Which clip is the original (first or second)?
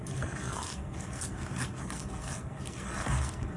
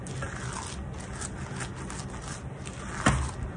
second